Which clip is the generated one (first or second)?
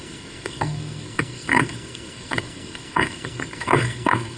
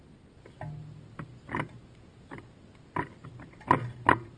first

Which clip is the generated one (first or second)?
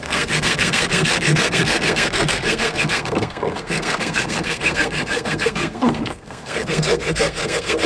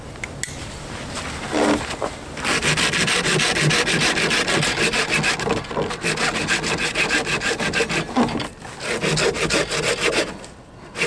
first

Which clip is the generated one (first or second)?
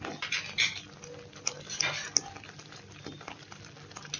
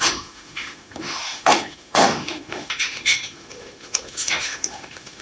second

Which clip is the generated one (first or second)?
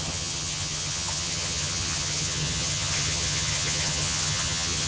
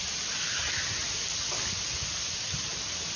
first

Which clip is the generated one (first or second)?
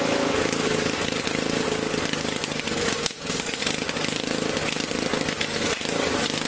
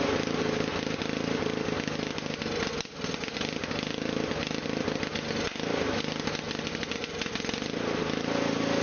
first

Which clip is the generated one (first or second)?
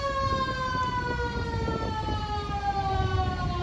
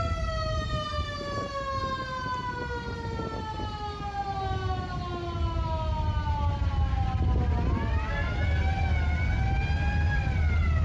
first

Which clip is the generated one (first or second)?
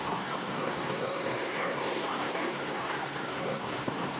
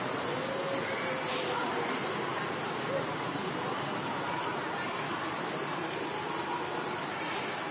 first